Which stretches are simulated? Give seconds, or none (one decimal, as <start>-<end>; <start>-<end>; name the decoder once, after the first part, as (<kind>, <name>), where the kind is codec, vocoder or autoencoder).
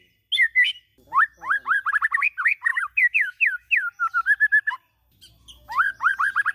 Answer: 2.7-3.9 (autoencoder, DAC-VAE)